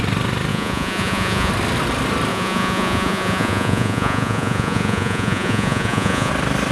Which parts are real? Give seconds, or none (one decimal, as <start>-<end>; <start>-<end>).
0.0-0.5; 1.5-2.3; 6.3-6.7